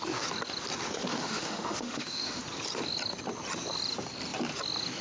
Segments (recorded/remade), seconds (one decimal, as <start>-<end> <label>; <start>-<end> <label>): 0.0-1.1 recorded; 1.1-2.4 remade; 2.4-5.0 recorded